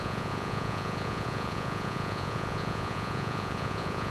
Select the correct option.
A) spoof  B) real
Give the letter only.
A